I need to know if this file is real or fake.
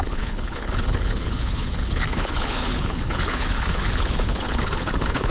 fake